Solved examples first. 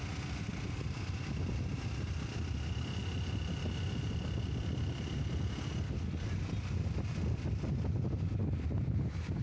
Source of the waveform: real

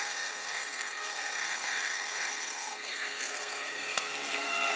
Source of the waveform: fake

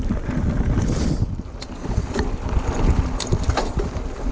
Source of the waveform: real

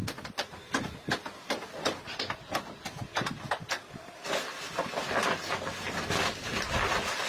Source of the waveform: real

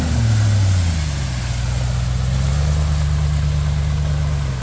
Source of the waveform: real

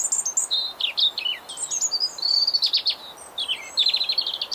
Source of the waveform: real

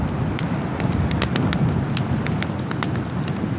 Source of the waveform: real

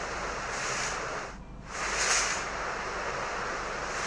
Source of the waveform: real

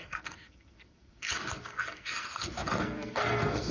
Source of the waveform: fake